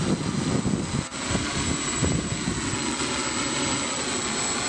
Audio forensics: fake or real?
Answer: real